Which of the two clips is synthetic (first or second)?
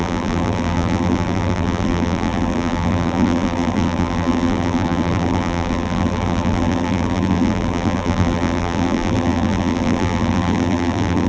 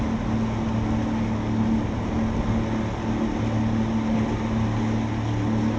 first